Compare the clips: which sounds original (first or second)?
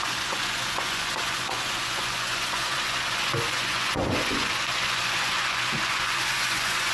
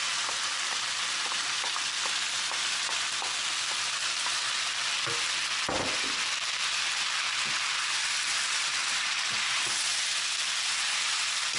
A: second